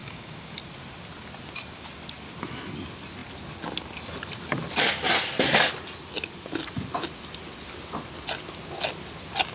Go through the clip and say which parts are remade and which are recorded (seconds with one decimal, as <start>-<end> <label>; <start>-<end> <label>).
0.0-0.5 remade; 0.5-9.5 recorded